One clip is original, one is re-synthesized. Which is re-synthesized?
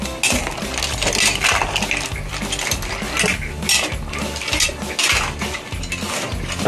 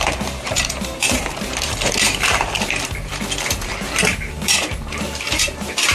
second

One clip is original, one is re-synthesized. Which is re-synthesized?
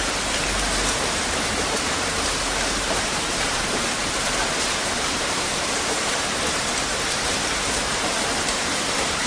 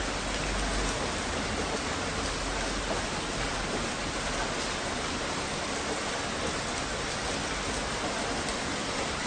first